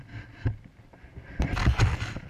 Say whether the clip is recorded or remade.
recorded